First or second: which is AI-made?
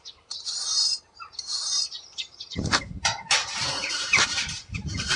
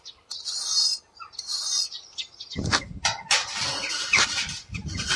first